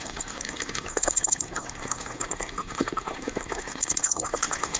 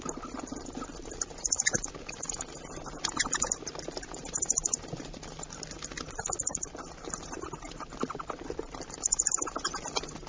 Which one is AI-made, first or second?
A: first